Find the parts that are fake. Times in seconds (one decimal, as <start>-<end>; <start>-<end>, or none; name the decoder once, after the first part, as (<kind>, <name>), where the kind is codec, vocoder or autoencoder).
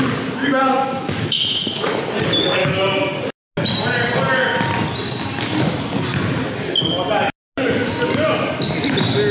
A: 0.4-2.0 (autoencoder, DAC-VAE); 2.6-3.1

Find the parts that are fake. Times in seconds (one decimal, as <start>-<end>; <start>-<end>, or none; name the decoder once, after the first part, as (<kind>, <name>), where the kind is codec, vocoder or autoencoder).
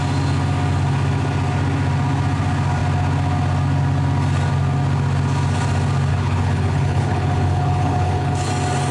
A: 6.1-8.5 (codec, HILCodec)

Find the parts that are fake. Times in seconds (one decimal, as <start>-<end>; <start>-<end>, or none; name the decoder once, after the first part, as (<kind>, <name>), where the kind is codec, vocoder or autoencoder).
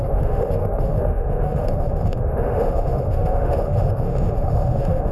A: 0.0-5.1 (autoencoder, DAC-VAE)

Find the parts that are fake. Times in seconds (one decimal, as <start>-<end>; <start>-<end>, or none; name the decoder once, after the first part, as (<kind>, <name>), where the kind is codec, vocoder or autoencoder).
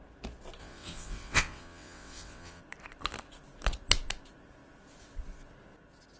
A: 0.6-2.6 (vocoder, WaveNeXt)